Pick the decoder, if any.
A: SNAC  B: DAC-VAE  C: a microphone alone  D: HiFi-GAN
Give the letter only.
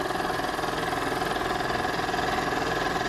C